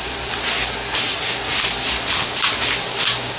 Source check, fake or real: real